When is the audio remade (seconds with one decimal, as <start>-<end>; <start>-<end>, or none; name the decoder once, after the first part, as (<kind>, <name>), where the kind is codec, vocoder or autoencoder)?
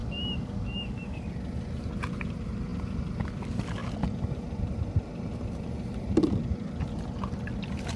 0.0-1.3 (codec, DAC)